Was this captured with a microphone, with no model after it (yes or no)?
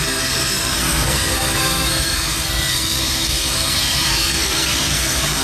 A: no